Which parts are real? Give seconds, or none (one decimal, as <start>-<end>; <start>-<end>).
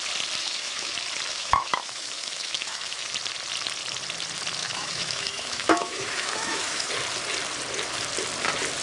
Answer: 0.0-0.4; 0.9-1.3; 3.1-4.6; 6.9-8.8